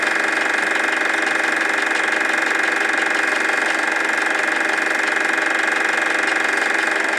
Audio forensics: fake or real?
real